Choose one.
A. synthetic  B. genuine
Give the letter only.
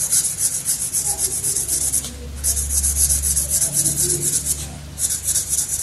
B